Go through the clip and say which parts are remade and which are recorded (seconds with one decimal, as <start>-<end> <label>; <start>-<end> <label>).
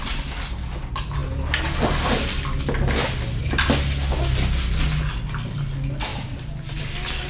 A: 0.0-6.1 recorded; 6.1-6.8 remade; 6.8-7.3 recorded